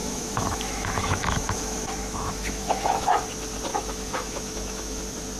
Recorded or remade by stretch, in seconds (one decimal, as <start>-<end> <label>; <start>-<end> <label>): 0.0-3.2 remade; 3.2-3.7 recorded; 3.7-5.0 remade; 5.0-5.4 recorded